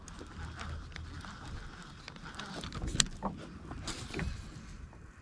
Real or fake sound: real